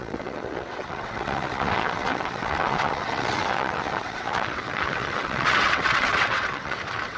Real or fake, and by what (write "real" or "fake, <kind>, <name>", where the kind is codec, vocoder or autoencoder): fake, vocoder, WaveNeXt